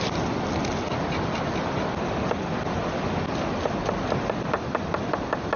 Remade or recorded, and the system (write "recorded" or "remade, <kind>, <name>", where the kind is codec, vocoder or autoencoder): recorded